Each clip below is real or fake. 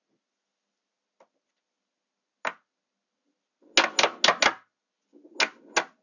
real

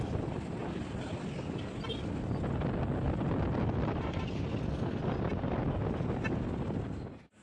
real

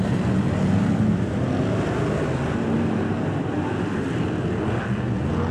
real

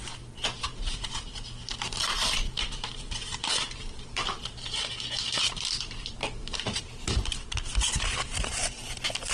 fake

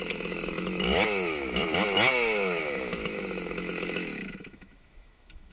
fake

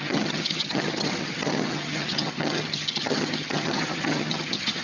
fake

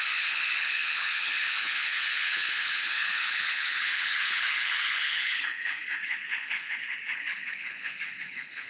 fake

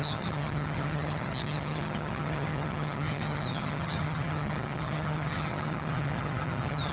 fake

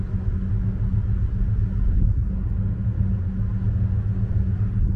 real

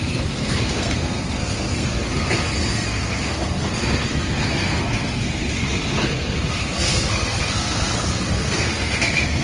fake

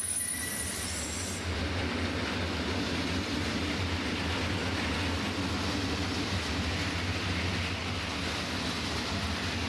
real